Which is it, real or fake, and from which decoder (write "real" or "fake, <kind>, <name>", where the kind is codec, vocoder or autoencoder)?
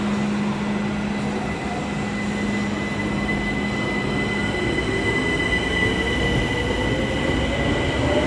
real